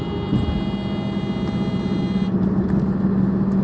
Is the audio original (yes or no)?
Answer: yes